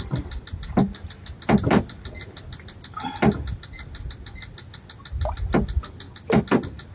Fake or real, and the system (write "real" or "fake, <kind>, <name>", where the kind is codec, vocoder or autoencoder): real